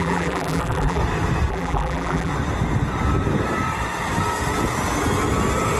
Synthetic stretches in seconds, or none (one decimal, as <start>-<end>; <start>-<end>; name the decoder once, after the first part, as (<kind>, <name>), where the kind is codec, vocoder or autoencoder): 0.0-1.0 (vocoder, BigVGAN v2); 1.5-2.3